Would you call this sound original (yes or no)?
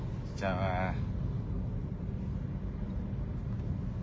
yes